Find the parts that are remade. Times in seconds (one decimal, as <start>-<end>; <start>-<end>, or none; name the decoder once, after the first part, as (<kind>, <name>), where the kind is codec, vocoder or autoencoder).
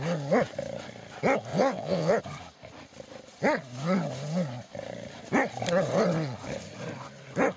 1.5-2.2 (vocoder, WaveNeXt)